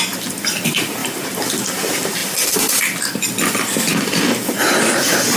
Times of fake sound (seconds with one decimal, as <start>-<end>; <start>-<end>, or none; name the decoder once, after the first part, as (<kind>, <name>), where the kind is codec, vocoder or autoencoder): 0.0-5.4 (vocoder, BigVGAN v2)